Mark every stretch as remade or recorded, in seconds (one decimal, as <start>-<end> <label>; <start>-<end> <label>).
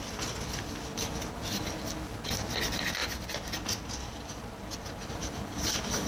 0.0-6.1 recorded